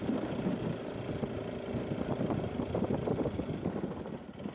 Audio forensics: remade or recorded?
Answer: recorded